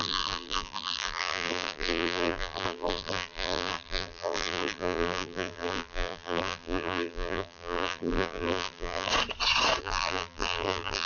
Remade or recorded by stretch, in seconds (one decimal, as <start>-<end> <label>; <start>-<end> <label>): 0.0-9.1 remade; 9.1-9.8 recorded; 9.8-11.1 remade